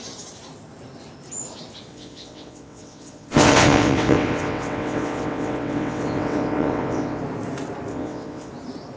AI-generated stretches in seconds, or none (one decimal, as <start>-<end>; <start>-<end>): 1.9-7.2; 7.9-8.5